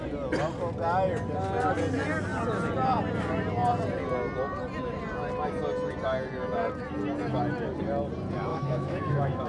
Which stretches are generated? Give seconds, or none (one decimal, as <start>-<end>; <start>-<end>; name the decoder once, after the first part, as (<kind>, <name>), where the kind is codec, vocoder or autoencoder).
8.5-9.5 (autoencoder, DAC-VAE)